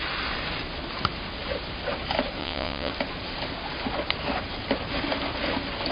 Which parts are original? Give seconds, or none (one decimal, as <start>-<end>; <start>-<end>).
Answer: 0.0-2.4; 2.9-5.9